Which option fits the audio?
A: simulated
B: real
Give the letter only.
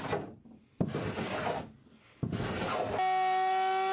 B